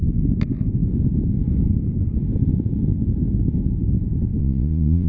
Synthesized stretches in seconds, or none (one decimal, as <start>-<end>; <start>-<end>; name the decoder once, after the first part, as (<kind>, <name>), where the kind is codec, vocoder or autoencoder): 4.4-5.1 (vocoder, Vocos)